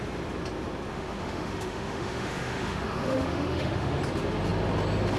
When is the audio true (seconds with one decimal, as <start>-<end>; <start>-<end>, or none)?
0.0-0.9; 4.0-5.2